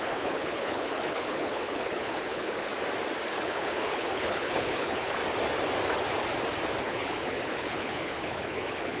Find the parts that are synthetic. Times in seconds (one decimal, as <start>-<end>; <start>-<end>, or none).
0.0-2.7; 3.3-5.2; 6.8-9.0